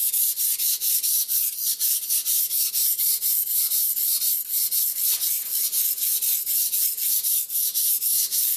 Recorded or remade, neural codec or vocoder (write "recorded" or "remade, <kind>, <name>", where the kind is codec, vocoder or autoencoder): recorded